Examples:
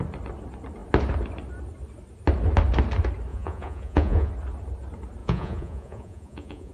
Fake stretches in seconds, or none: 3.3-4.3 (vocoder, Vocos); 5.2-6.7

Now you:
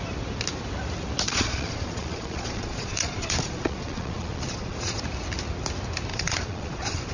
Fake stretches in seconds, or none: 1.3-5.0 (vocoder, Vocos); 6.1-7.1

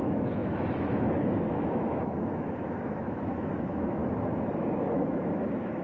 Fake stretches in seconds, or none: 0.0-4.0 (autoencoder, DAC-VAE); 4.6-5.8

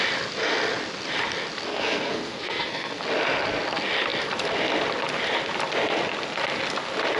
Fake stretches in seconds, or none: 1.7-3.0 (codec, SNAC)

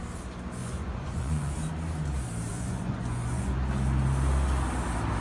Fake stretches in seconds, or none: 0.6-1.5 (vocoder, Vocos); 2.5-3.5

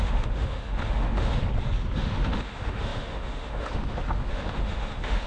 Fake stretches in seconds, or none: 0.0-1.4 (autoencoder, DAC-VAE); 2.0-5.3

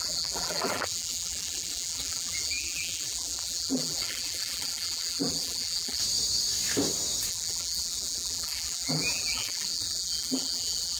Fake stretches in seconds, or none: 0.0-6.0 (vocoder, BigVGAN v2); 7.3-11.0